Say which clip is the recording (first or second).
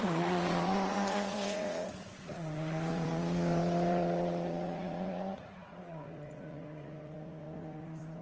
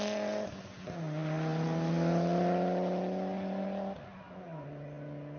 second